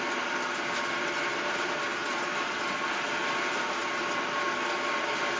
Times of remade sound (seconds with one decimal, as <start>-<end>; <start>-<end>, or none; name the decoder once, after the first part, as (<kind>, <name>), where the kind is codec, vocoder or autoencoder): none